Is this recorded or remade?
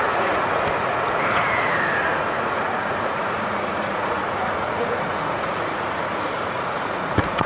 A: remade